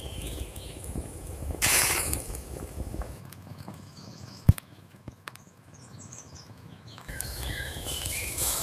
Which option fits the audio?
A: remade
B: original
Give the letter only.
A